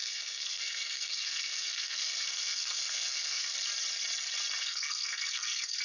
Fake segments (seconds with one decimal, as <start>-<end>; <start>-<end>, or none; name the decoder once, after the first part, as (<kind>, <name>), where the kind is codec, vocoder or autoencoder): 0.0-3.5 (codec, SNAC); 4.6-5.8